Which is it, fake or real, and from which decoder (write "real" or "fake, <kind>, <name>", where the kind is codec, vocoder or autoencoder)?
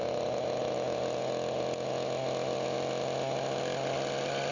real